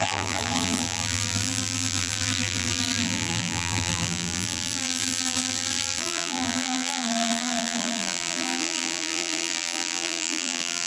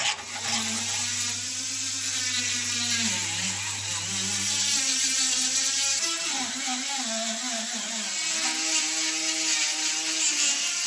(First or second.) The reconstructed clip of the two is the first